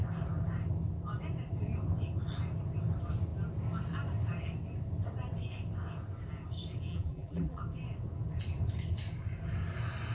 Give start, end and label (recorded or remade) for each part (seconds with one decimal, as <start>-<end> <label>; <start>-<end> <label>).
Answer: 0.0-6.9 recorded; 6.9-7.6 remade; 7.6-10.1 recorded